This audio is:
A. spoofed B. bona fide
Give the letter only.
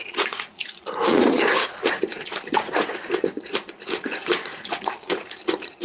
A